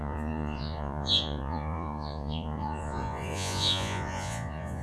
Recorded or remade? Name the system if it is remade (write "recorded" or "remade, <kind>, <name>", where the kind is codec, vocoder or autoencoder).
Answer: remade, vocoder, Vocos